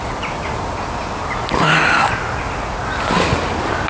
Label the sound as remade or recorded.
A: recorded